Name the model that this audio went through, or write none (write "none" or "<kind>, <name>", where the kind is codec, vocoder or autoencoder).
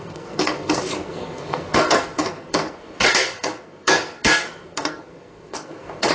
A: codec, SNAC